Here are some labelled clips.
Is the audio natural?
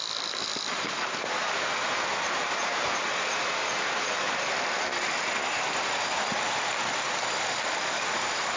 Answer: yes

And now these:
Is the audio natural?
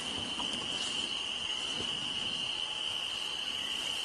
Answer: yes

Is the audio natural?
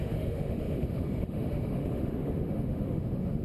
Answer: no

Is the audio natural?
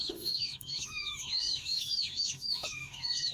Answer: no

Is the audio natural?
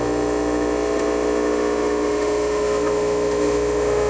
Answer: no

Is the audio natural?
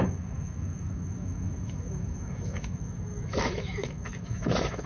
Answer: no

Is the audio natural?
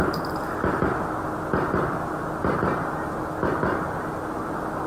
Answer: yes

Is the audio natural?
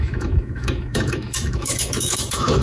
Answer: no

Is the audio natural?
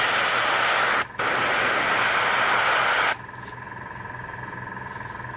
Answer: yes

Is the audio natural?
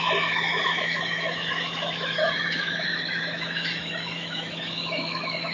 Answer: no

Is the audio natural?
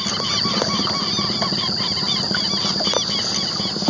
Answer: yes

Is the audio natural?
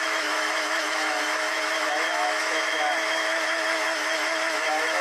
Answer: no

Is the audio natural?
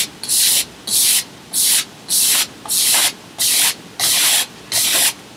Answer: yes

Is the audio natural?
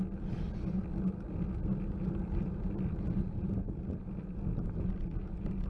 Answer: yes